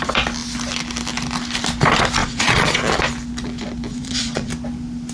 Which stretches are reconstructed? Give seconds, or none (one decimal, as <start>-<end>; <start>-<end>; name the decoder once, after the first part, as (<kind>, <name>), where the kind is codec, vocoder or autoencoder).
2.2-2.8 (vocoder, Vocos); 3.9-4.5